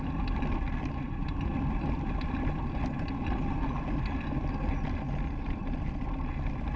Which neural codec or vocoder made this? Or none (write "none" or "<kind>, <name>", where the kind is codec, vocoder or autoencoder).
none